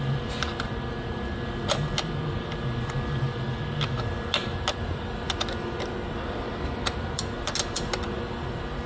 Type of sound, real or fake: real